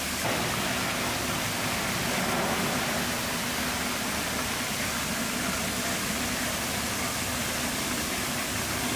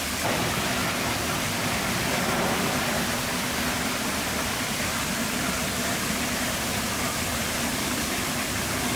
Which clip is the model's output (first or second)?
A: second